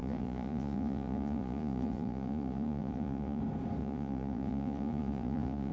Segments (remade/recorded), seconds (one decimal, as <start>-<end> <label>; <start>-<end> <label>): 0.0-3.4 remade; 3.4-3.8 recorded; 3.8-5.7 remade